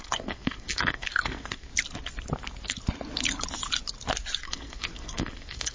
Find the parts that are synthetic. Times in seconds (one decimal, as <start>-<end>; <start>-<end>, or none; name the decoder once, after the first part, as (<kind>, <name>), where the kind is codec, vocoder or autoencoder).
0.0-1.7 (codec, SNAC); 4.4-5.7